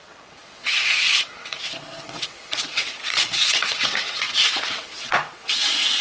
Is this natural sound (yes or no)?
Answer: no